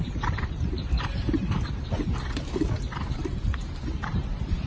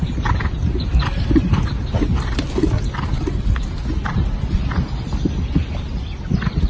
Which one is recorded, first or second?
second